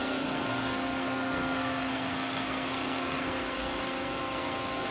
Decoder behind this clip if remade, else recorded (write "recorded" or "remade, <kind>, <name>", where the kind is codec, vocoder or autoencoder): remade, codec, SNAC